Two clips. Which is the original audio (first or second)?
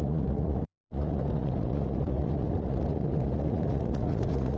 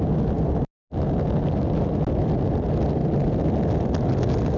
second